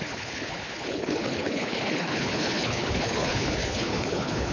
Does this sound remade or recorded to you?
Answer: remade